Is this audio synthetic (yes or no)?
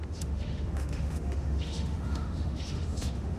yes